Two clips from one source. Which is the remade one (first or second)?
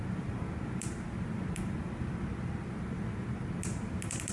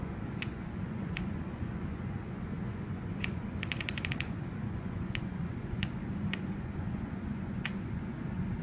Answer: second